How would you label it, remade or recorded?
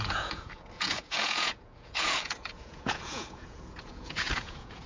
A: remade